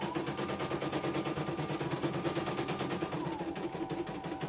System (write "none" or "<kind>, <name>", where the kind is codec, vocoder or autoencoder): none